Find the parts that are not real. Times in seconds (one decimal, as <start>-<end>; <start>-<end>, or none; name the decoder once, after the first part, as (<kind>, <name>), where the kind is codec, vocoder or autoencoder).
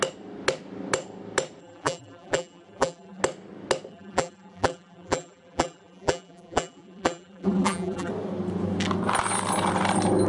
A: 1.6-3.2 (vocoder, BigVGAN v2); 3.9-8.1